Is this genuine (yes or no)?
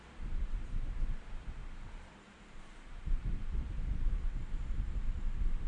no